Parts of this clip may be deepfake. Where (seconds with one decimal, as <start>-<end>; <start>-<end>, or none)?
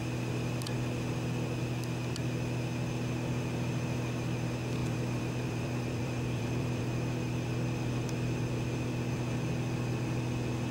4.8-6.8